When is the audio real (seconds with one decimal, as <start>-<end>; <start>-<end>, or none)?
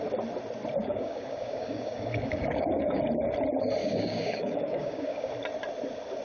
0.0-0.8; 3.0-3.8; 5.3-6.2